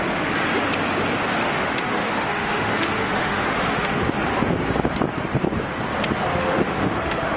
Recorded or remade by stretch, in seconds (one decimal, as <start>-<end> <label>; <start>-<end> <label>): 0.0-1.3 recorded; 1.3-4.0 remade; 4.0-6.3 recorded; 6.3-7.4 remade

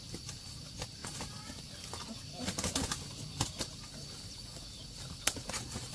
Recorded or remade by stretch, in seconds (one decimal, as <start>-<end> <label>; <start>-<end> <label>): 0.0-5.9 recorded

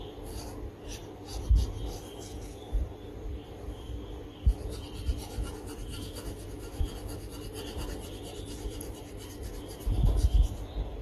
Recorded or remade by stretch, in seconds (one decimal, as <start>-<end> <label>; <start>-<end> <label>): 0.0-5.9 recorded; 5.9-7.3 remade; 7.3-11.0 recorded

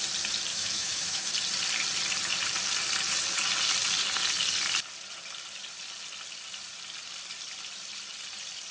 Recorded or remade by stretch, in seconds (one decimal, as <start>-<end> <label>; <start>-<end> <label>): 0.0-0.5 recorded; 0.5-1.3 remade; 1.3-8.7 recorded